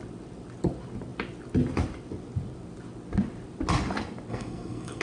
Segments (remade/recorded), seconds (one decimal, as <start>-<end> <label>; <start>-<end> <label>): 0.0-4.3 recorded; 4.3-5.0 remade

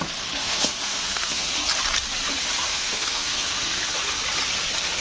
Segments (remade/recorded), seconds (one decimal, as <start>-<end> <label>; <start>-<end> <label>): 0.0-0.4 recorded; 0.4-1.5 remade; 1.5-2.7 recorded; 2.7-3.8 remade; 3.8-5.0 recorded

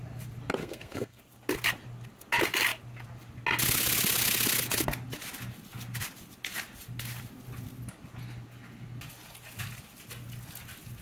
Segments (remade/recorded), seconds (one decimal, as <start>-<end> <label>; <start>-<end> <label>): 0.0-0.6 recorded; 0.6-1.2 remade; 1.2-11.0 recorded

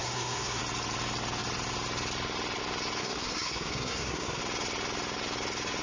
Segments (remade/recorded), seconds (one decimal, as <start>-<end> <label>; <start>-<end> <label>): 0.0-0.6 remade; 0.6-3.0 recorded; 3.0-4.4 remade; 4.4-5.8 recorded

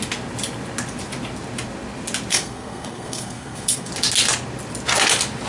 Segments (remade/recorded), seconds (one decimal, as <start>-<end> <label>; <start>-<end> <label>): 0.0-2.3 recorded; 2.3-3.9 remade; 3.9-5.5 recorded